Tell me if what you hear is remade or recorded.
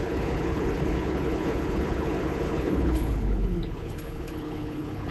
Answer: remade